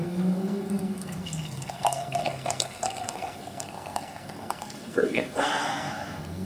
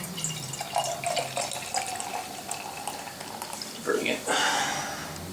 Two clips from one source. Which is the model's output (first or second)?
first